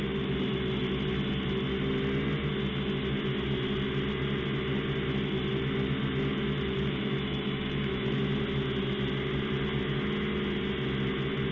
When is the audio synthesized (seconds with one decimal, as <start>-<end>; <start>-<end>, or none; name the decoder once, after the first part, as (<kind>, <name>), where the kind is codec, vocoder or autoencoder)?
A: 6.3-8.2 (autoencoder, DAC-VAE)